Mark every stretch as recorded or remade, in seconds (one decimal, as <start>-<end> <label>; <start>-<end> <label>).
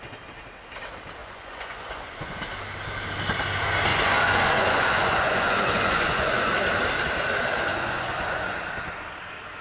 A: 0.0-1.2 recorded; 1.2-2.4 remade; 2.4-3.9 recorded; 3.9-6.5 remade; 6.5-7.7 recorded; 7.7-8.7 remade; 8.7-9.6 recorded